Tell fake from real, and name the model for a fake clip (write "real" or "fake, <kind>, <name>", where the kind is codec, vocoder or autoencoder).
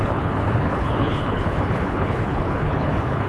fake, codec, HILCodec